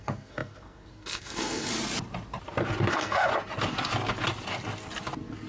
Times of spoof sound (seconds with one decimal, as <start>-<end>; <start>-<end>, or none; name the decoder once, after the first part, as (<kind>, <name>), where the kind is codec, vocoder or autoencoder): 0.0-1.7 (codec, SNAC); 2.9-3.3

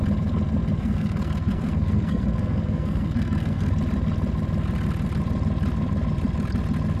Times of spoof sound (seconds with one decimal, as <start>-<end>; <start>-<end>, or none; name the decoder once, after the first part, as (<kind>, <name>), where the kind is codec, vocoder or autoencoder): 0.8-3.7 (codec, SNAC)

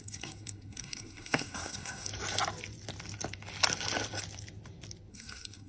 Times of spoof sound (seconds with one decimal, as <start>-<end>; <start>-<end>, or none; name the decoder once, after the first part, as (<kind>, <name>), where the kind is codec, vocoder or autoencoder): 0.0-2.1 (codec, SNAC); 5.1-5.7